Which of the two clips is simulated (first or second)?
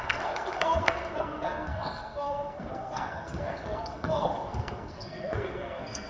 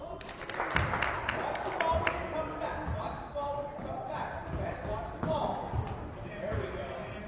first